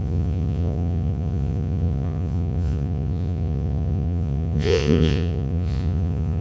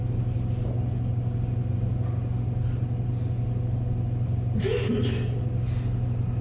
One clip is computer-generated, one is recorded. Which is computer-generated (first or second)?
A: first